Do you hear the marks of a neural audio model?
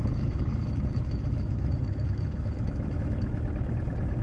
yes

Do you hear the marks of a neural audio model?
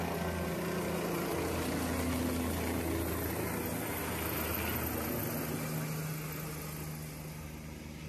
no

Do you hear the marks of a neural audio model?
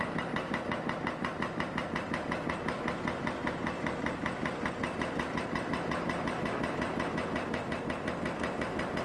no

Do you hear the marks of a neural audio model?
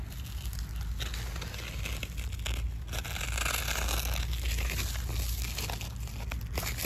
no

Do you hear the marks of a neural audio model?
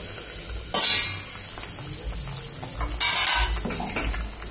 no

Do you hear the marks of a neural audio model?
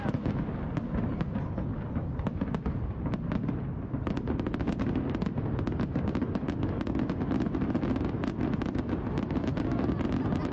no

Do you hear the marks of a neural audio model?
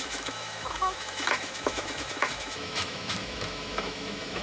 yes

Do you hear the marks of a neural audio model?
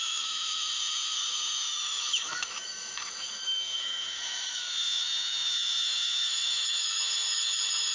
yes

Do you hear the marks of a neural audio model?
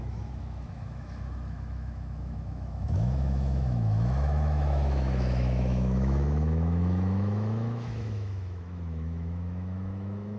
yes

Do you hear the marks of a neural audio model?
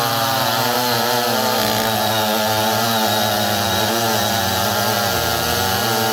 no